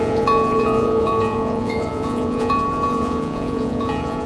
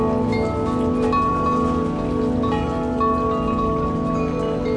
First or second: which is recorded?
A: second